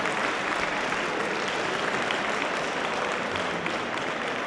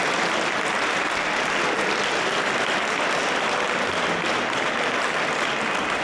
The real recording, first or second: second